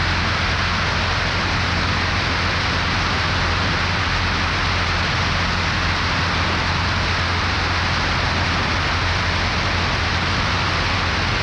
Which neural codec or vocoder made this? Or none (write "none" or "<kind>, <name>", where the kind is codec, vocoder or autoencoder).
none